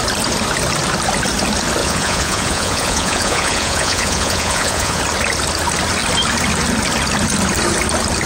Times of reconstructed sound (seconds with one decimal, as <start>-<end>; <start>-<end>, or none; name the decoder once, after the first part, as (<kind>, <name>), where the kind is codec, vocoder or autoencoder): 1.8-5.0 (vocoder, Vocos)